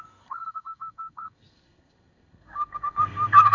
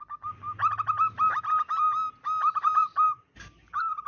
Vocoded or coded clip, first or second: first